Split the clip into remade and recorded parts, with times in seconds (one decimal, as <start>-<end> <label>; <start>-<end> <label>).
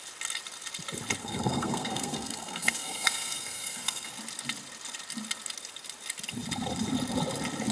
0.0-1.2 recorded; 1.2-4.1 remade; 4.1-7.7 recorded